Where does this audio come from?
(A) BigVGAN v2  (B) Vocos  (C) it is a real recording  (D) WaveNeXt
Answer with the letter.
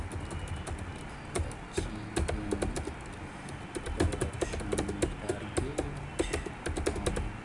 C